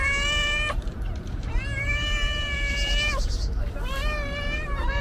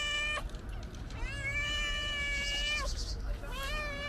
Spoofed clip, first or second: first